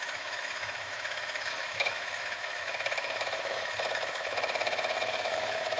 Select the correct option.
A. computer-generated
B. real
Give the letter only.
A